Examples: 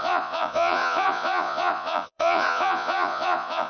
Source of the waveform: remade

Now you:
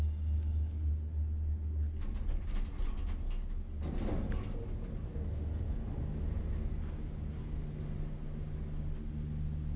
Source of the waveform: recorded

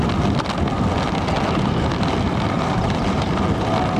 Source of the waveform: recorded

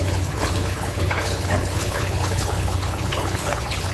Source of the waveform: remade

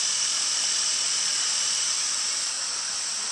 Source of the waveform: remade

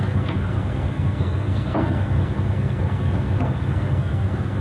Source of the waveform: remade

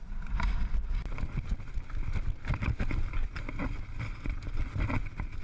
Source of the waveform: recorded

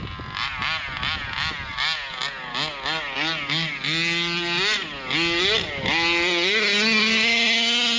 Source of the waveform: recorded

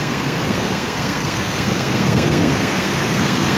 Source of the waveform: remade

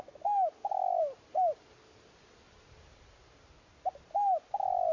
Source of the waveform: recorded